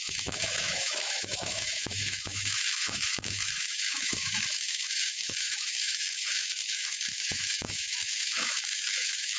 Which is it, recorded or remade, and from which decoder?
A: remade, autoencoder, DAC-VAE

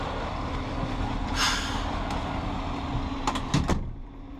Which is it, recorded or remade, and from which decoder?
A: recorded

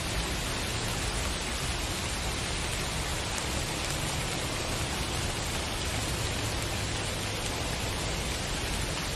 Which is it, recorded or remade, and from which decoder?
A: recorded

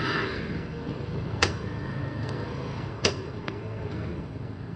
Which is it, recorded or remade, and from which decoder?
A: remade, codec, SNAC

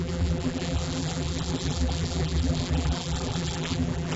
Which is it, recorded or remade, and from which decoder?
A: remade, vocoder, BigVGAN v2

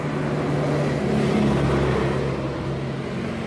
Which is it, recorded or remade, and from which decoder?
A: recorded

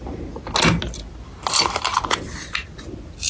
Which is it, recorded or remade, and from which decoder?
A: recorded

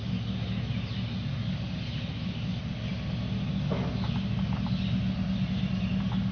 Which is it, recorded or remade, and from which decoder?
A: recorded